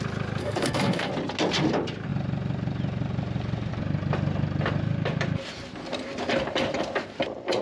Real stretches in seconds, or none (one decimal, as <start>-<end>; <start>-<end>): 0.0-0.4; 1.1-7.6